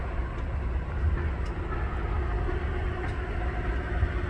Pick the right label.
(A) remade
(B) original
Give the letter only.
B